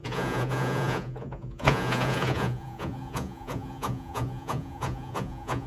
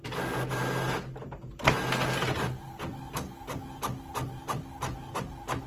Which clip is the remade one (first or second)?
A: first